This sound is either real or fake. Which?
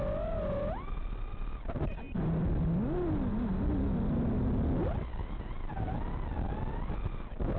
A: real